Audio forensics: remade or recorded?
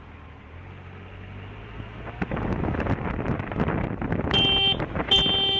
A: recorded